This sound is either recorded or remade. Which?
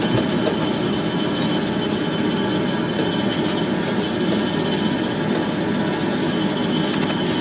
recorded